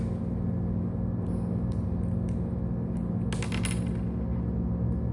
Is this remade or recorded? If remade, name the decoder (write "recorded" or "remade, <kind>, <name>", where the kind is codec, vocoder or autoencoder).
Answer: recorded